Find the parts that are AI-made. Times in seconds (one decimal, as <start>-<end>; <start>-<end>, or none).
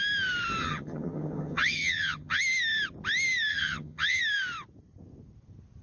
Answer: 0.6-2.4; 3.5-4.2